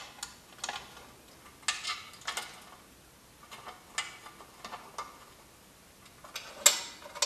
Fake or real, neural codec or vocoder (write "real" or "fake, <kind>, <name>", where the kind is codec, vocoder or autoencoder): real